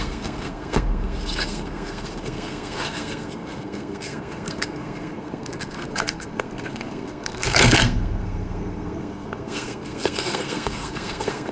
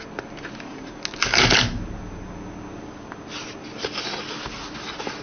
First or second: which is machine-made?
first